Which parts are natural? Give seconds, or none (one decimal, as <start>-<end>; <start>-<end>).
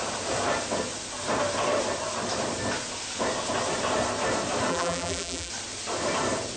0.0-4.7; 5.5-6.6